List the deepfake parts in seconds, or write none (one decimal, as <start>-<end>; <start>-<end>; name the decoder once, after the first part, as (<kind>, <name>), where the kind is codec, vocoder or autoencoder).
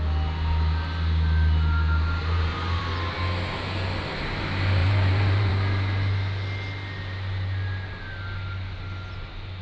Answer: 2.2-2.8 (vocoder, BigVGAN v2); 4.8-5.5